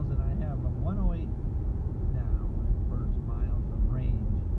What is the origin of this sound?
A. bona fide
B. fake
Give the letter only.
A